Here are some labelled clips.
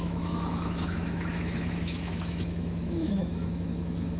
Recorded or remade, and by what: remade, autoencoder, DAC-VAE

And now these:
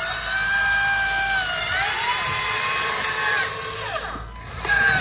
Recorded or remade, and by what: recorded